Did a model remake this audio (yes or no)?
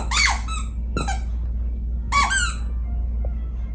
no